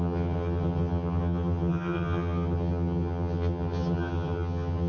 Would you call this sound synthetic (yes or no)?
yes